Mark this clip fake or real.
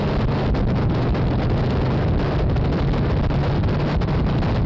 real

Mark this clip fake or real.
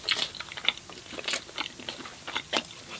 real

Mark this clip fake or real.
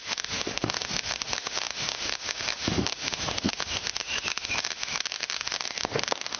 fake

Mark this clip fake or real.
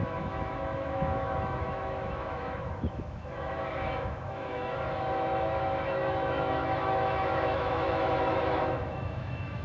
fake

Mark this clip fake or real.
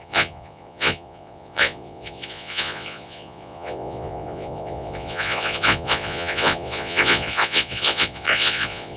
fake